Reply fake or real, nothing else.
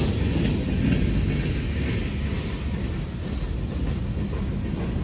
real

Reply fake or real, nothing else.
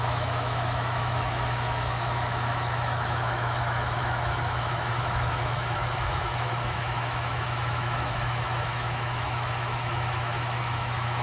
fake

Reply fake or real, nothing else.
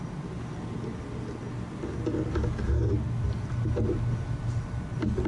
real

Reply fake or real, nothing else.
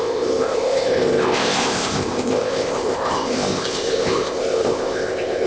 fake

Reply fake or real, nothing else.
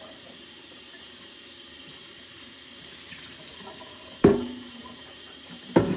fake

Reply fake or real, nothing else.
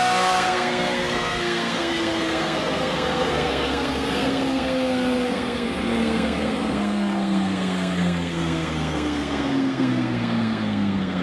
fake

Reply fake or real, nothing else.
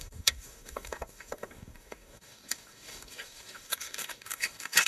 fake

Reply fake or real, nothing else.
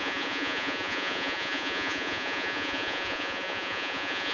fake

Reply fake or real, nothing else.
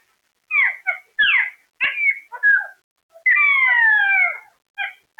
real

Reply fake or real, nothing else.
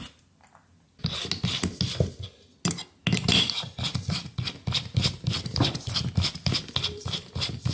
real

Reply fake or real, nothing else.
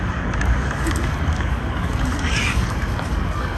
fake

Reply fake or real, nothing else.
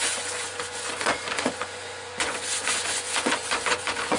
fake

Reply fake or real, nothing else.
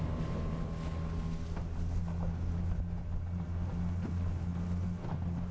real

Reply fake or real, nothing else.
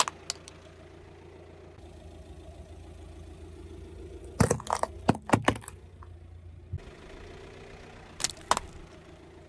real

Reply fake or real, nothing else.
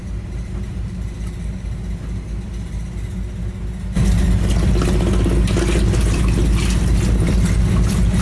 real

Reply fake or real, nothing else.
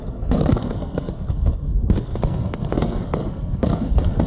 fake